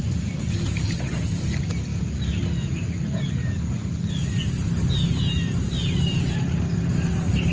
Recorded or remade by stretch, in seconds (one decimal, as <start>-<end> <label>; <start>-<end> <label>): 0.0-7.5 recorded